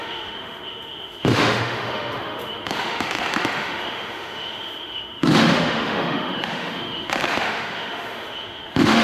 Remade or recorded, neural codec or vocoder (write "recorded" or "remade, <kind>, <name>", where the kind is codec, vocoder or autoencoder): remade, autoencoder, DAC-VAE